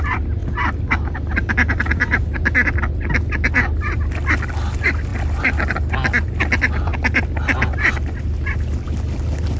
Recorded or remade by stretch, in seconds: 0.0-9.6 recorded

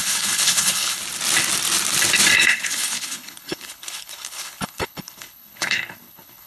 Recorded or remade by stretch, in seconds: 0.0-1.0 remade; 1.0-2.5 recorded; 2.5-6.5 remade

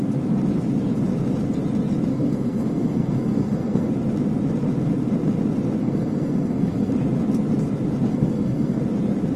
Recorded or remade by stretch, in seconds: 0.0-2.1 recorded; 2.1-3.9 remade; 3.9-5.8 recorded; 5.8-6.9 remade; 6.9-8.1 recorded; 8.1-8.8 remade; 8.8-9.4 recorded

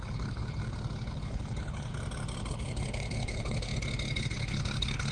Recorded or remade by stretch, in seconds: 0.0-0.6 remade; 0.6-1.1 recorded; 1.1-1.9 remade; 1.9-2.5 recorded; 2.5-3.7 remade; 3.7-4.2 recorded; 4.2-5.1 remade

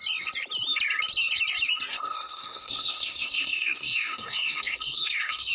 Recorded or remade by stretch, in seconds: 0.0-1.9 recorded; 1.9-5.5 remade

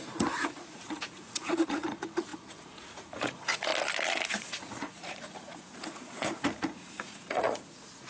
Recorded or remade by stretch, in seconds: 0.0-3.7 remade; 3.7-4.3 recorded; 4.3-8.1 remade

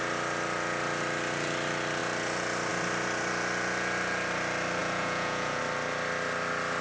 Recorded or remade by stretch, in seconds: 0.0-4.8 recorded; 4.8-5.6 remade; 5.6-6.8 recorded

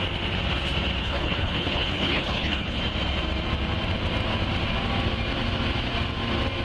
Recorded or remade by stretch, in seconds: 0.0-1.0 recorded; 1.0-2.8 remade; 2.8-6.6 recorded